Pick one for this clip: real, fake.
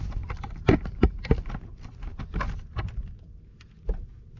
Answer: real